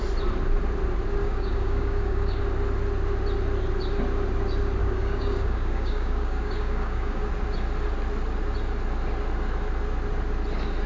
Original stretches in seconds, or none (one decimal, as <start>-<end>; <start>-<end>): 0.0-1.2; 2.4-4.8; 7.3-10.9